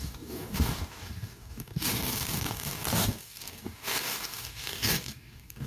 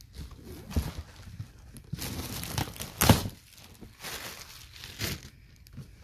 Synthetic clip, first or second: first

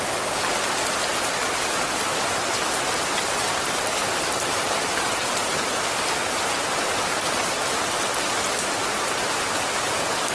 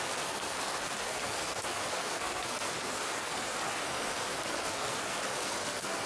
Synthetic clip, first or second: second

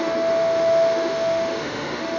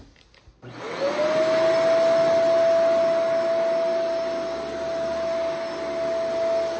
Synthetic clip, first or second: first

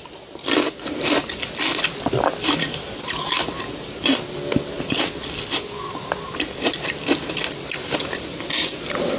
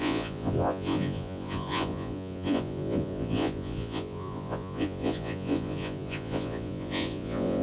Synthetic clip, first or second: second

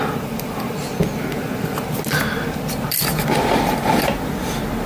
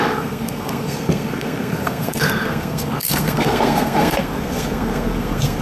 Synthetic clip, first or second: second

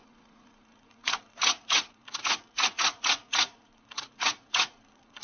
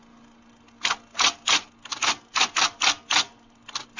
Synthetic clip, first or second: first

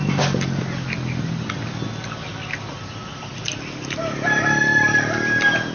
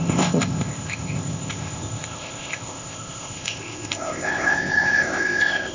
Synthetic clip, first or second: second